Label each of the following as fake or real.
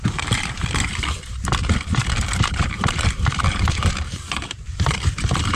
fake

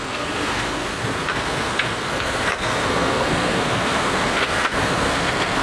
fake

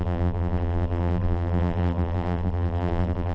fake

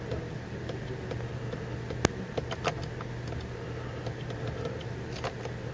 real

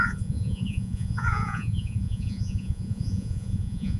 fake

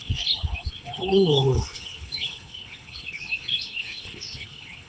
fake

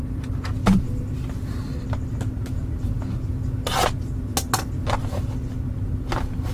real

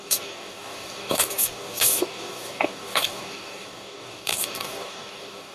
fake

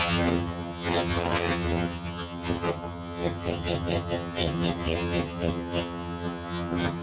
fake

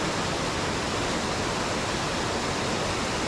real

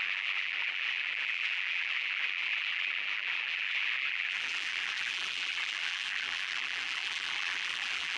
fake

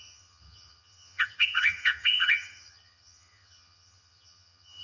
fake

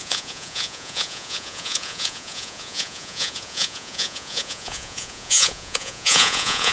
fake